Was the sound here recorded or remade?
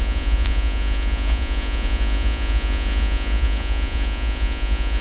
remade